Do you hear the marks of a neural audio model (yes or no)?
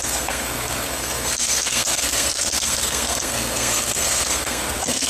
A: yes